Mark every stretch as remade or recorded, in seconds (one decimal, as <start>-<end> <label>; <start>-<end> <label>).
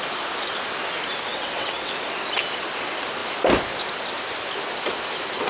0.0-1.3 recorded; 1.3-1.9 remade; 1.9-5.5 recorded